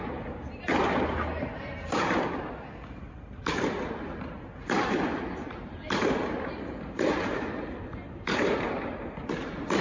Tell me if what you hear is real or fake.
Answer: real